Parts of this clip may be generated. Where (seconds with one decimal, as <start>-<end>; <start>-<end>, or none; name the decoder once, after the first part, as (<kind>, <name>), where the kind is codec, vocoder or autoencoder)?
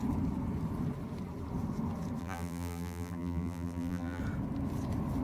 2.2-4.2 (vocoder, BigVGAN v2)